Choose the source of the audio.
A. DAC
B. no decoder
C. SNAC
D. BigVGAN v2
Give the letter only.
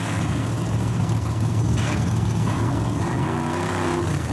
C